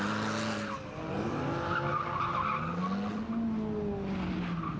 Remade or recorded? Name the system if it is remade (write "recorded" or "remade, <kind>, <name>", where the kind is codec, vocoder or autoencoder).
recorded